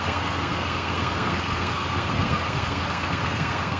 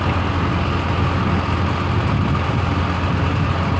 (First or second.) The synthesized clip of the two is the first